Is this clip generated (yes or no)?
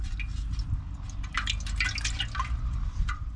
no